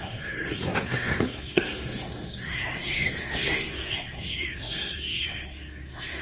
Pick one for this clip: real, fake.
fake